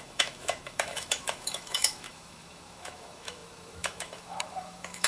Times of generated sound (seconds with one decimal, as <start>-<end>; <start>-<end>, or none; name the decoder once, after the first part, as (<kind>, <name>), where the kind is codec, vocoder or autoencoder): 0.0-5.1 (autoencoder, DAC-VAE)